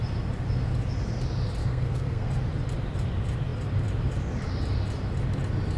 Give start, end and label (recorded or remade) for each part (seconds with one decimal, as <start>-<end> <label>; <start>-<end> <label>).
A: 0.0-1.6 recorded; 1.6-2.3 remade; 2.3-5.8 recorded